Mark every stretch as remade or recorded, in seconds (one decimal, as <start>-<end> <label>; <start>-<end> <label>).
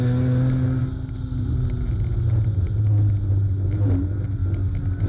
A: 0.0-5.1 recorded